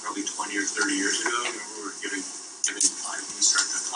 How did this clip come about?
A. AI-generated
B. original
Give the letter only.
B